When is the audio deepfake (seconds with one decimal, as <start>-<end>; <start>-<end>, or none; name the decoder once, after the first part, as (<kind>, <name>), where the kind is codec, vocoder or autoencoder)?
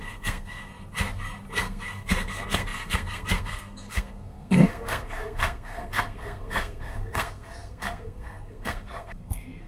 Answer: 0.0-0.7 (codec, SNAC); 1.5-9.7